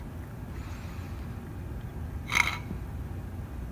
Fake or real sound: real